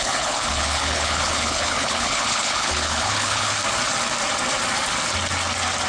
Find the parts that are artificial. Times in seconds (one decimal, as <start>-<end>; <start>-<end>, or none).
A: 0.0-3.6